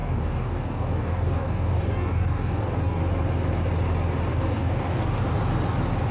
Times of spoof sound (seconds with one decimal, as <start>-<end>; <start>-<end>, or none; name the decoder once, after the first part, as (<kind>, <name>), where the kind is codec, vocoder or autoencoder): 0.0-3.0 (codec, DAC); 4.3-5.2